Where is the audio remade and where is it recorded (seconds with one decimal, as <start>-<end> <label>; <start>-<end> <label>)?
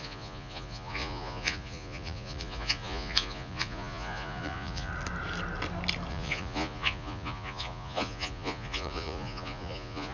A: 0.0-4.9 remade; 4.9-6.1 recorded; 6.1-10.1 remade